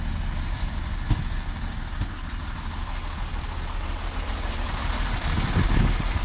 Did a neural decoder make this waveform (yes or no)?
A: no